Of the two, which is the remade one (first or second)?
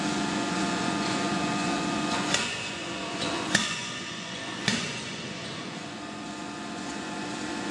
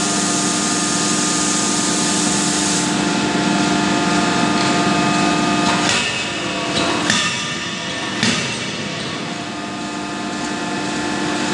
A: first